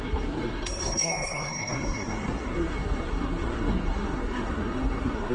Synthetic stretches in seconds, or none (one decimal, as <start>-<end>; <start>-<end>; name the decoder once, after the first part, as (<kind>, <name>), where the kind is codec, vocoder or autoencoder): 0.0-5.3 (codec, SNAC)